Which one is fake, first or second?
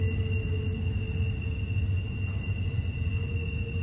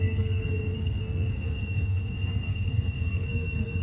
second